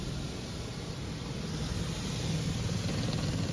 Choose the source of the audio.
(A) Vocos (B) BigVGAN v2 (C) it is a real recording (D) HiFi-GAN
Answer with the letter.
C